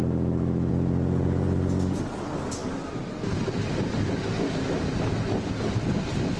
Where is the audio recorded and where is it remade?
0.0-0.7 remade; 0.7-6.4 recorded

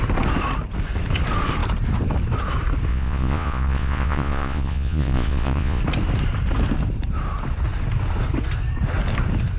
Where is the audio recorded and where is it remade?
0.0-2.9 recorded; 2.9-5.8 remade; 5.8-9.6 recorded

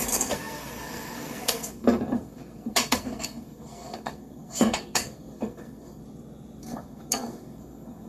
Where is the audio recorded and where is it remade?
0.0-6.0 remade; 6.0-6.6 recorded; 6.6-8.1 remade

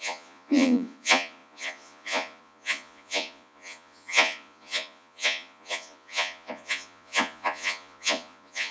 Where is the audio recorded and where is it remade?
0.0-8.7 remade

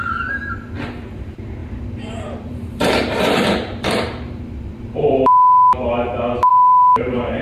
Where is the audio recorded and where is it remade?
0.0-0.5 remade; 0.5-1.6 recorded; 1.6-5.1 remade; 5.1-6.5 recorded; 6.5-7.4 remade

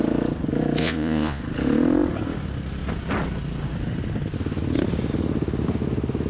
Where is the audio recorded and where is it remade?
0.0-0.8 recorded; 0.8-1.4 remade; 1.4-6.3 recorded